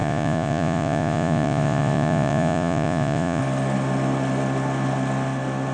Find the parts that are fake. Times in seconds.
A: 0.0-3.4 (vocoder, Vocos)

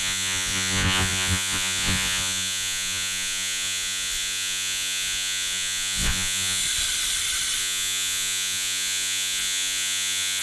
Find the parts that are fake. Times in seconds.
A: 0.0-6.6 (vocoder, Vocos); 7.6-10.4